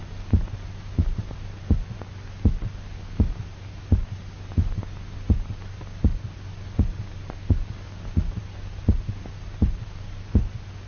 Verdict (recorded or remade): recorded